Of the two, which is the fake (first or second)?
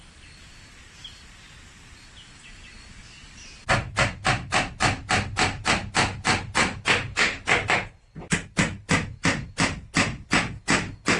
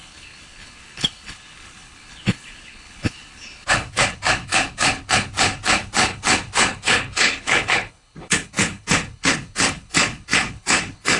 second